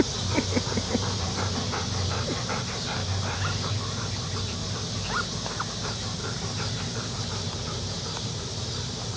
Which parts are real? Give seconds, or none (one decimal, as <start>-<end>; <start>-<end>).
3.0-3.7; 4.6-5.6